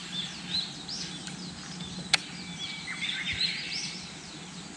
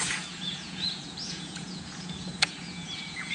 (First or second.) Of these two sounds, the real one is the first